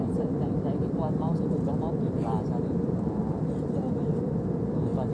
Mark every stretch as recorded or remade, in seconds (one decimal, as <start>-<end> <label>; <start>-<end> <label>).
0.0-3.1 remade; 3.1-3.6 recorded; 3.6-4.3 remade; 4.3-5.1 recorded